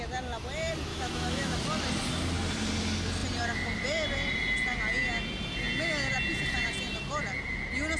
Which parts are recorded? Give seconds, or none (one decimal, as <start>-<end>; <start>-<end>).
0.0-0.9; 1.6-8.0